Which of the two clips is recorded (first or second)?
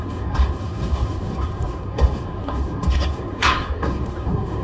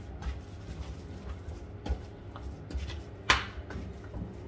second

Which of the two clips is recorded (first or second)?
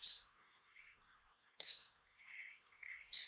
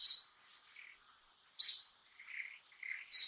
second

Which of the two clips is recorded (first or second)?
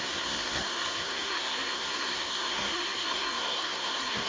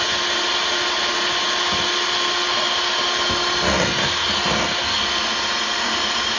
second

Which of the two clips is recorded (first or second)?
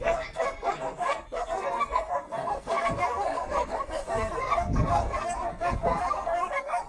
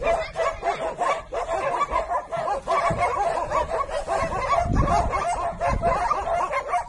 second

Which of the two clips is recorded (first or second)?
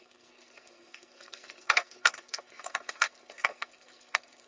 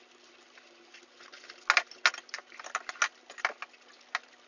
second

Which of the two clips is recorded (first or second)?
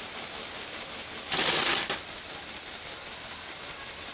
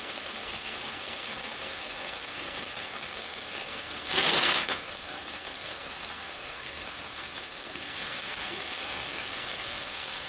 first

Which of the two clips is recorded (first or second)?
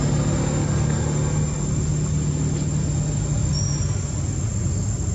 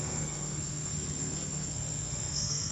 first